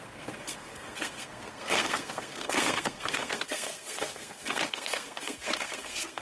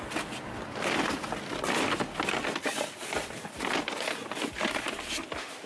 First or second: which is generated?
first